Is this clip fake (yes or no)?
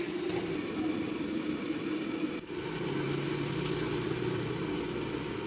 no